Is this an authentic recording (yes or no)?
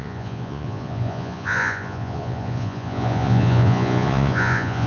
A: no